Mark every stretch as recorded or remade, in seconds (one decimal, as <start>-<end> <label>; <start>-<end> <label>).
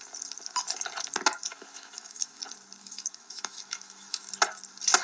0.0-1.5 recorded; 1.5-2.4 remade; 2.4-2.8 recorded; 2.8-4.3 remade; 4.3-5.0 recorded